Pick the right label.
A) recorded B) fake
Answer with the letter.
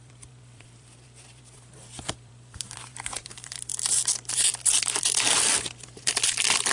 B